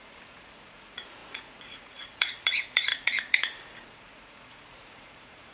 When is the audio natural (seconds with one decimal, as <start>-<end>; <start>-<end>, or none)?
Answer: none